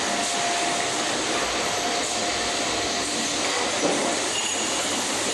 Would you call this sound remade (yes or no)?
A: no